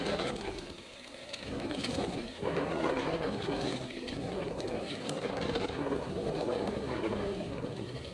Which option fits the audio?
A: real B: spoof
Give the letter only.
B